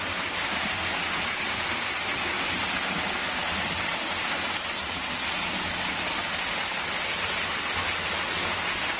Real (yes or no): yes